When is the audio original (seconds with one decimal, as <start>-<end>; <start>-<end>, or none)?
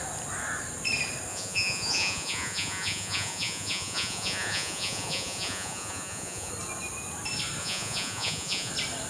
0.0-1.3; 6.5-7.6; 8.7-9.1